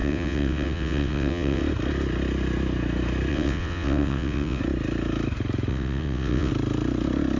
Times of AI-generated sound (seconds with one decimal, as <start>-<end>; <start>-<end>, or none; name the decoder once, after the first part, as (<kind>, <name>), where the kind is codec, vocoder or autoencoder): 0.0-1.6 (vocoder, WaveNeXt); 3.3-4.6; 5.7-6.5